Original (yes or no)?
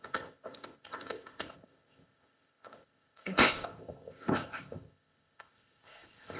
no